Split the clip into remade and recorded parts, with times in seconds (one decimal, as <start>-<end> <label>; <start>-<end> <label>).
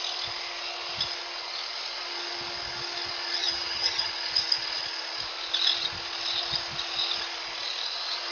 0.0-3.4 recorded; 3.4-4.1 remade; 4.1-8.3 recorded